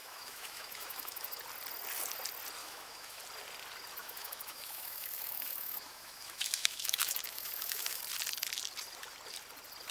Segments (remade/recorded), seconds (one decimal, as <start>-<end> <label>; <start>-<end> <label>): 0.0-1.4 remade; 1.4-2.6 recorded; 2.6-3.2 remade; 3.2-4.0 recorded; 4.0-8.0 remade; 8.0-9.9 recorded